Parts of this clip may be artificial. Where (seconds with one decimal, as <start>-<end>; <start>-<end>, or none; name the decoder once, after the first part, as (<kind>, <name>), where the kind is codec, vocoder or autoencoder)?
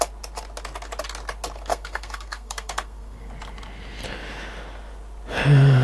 1.7-3.3 (codec, SNAC)